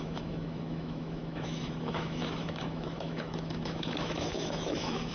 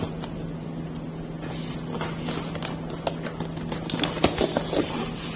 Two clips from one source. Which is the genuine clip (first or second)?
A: second